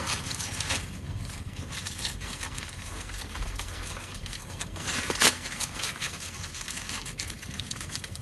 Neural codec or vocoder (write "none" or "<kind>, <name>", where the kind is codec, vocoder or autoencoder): codec, SNAC